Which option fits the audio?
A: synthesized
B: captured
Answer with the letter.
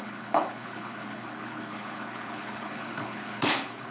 A